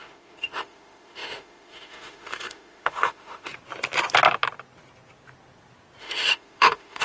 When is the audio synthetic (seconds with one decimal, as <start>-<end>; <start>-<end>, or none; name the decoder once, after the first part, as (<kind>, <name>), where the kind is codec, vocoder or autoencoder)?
0.0-3.5 (autoencoder, DAC-VAE); 6.0-7.0